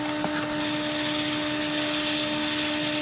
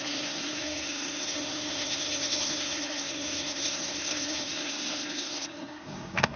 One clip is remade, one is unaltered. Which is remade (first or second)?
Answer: second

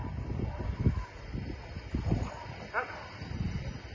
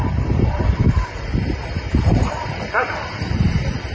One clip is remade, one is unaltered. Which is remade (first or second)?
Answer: second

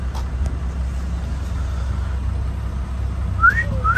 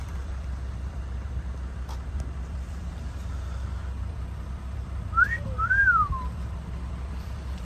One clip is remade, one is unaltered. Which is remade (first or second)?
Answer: second